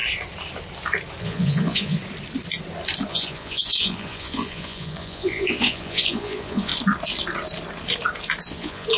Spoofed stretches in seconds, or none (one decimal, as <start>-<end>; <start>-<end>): 1.2-2.0; 3.1-6.7; 8.4-9.0